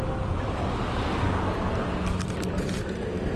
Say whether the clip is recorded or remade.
recorded